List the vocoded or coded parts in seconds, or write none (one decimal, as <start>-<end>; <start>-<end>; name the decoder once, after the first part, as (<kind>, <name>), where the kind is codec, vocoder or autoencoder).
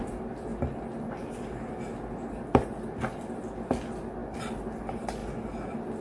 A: none